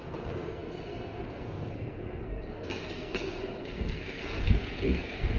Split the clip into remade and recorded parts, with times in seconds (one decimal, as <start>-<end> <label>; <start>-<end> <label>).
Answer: 0.0-5.4 remade